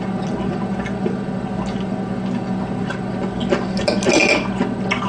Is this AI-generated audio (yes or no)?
no